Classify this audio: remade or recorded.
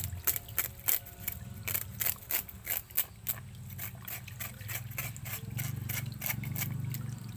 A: recorded